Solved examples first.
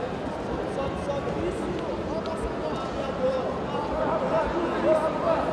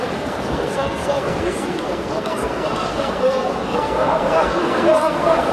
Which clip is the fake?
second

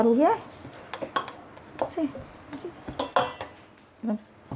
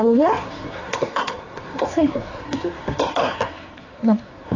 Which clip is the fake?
second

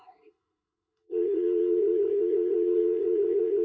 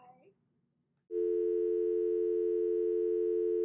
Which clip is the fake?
first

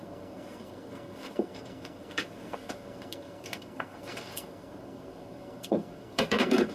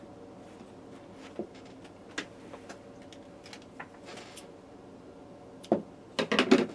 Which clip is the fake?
first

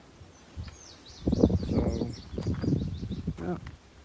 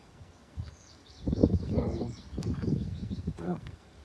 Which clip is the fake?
second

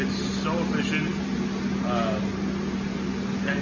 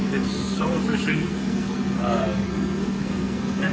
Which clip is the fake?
second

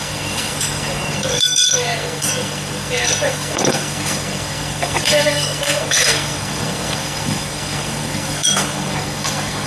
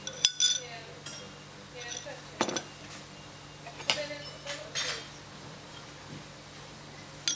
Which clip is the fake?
first